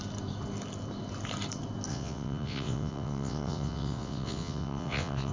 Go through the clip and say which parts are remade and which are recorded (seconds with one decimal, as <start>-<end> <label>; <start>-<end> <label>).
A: 0.0-1.9 recorded; 1.9-5.3 remade